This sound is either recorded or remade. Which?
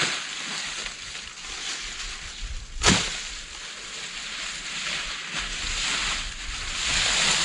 recorded